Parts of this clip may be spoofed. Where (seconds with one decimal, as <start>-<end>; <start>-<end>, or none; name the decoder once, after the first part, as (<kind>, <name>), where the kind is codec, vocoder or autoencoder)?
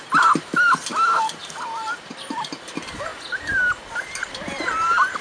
none